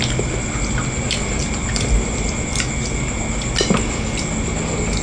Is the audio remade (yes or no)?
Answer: no